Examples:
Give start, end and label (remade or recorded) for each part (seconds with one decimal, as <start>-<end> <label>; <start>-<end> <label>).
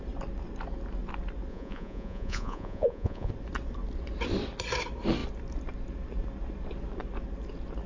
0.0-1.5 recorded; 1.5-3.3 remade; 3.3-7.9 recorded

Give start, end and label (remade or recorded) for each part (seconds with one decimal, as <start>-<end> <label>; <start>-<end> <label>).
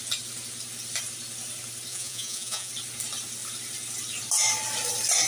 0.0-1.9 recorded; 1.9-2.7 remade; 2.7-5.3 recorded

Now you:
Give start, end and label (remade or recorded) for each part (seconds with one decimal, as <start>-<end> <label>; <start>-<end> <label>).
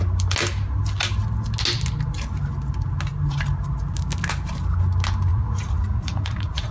0.0-5.3 recorded; 5.3-6.7 remade